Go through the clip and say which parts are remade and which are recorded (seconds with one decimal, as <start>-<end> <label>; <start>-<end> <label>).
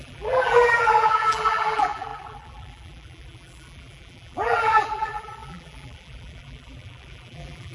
0.0-7.7 remade